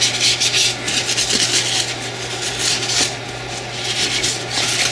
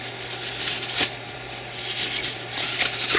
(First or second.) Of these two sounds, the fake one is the second